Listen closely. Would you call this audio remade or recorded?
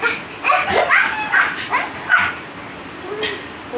recorded